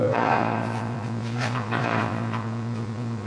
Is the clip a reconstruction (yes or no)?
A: yes